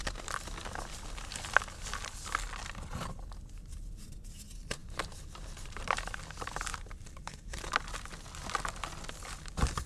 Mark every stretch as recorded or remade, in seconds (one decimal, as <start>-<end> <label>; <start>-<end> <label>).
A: 0.0-4.8 recorded; 4.8-6.2 remade; 6.2-6.7 recorded; 6.7-7.6 remade; 7.6-9.9 recorded